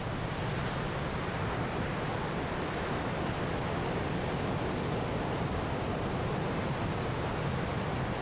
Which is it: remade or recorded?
recorded